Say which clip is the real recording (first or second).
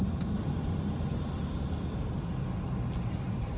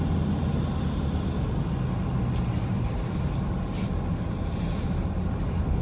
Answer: second